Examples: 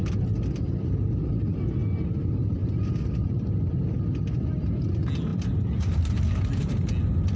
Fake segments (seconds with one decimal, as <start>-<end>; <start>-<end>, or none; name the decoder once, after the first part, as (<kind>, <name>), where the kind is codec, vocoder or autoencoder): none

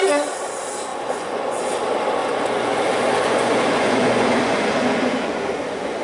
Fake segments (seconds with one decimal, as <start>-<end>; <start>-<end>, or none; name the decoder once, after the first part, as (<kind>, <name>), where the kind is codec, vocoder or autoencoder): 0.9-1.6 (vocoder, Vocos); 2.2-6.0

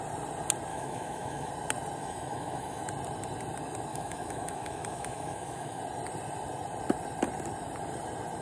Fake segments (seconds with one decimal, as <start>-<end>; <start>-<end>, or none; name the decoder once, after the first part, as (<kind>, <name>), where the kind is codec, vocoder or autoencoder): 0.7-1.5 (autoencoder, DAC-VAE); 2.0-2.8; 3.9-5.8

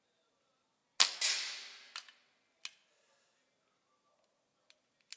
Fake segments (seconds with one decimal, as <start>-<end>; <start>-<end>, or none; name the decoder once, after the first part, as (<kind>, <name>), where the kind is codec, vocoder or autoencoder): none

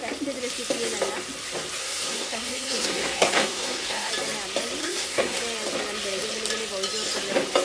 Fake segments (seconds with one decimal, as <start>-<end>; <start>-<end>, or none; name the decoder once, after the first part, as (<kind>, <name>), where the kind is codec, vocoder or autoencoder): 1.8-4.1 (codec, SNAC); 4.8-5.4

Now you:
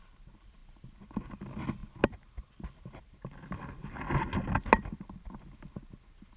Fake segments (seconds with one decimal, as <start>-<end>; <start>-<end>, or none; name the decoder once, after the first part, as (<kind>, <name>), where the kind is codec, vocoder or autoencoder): 1.8-5.6 (vocoder, BigVGAN v2)

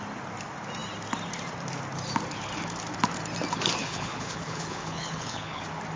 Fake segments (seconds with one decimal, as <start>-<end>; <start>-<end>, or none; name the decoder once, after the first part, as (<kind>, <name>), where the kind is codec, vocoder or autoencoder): 3.8-5.6 (codec, HILCodec)

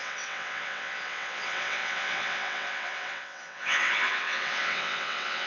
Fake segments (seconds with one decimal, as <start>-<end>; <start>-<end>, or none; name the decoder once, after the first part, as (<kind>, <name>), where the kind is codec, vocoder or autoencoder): 0.0-5.5 (vocoder, WaveNeXt)